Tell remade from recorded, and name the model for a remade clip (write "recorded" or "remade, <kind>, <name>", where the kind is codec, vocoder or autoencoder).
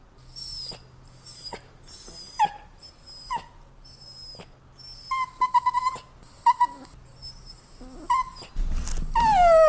recorded